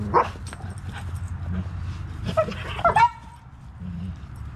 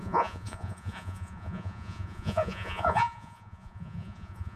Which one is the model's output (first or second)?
second